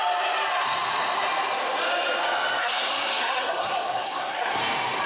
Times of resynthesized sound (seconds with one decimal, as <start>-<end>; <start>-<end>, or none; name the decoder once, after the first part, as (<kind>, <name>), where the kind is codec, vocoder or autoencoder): 2.6-4.6 (codec, SNAC)